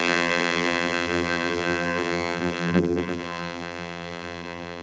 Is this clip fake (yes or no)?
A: yes